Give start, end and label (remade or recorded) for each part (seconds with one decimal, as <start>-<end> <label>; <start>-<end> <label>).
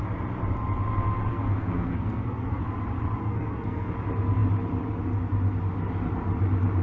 0.0-1.3 recorded; 1.3-2.6 remade; 2.6-3.2 recorded; 3.2-3.9 remade; 3.9-6.8 recorded